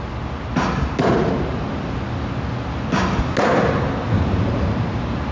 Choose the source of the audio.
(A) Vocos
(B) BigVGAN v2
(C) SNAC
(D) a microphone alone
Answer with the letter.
D